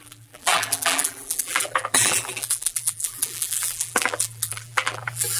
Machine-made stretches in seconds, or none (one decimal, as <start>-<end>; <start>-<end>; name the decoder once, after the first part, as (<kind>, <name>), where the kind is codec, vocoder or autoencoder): 0.0-5.4 (vocoder, BigVGAN v2)